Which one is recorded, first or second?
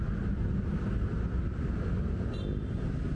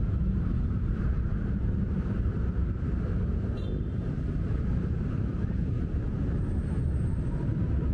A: first